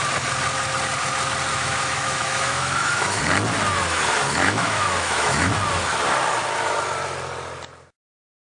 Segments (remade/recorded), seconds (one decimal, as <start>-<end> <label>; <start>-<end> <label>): 0.0-1.5 recorded; 1.5-3.2 remade; 3.2-4.4 recorded; 4.4-5.5 remade; 5.5-8.4 recorded